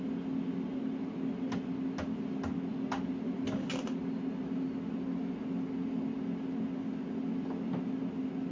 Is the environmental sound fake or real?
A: real